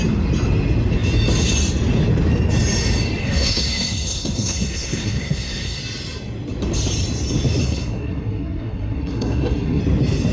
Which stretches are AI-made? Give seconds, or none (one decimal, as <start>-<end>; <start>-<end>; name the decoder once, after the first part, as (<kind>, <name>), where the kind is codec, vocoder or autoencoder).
3.2-5.8 (codec, SNAC); 7.6-9.8